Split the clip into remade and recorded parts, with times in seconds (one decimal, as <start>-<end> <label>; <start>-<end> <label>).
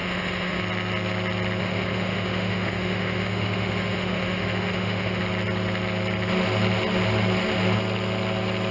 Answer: 0.0-0.6 remade; 0.6-1.6 recorded; 1.6-5.2 remade; 5.2-8.7 recorded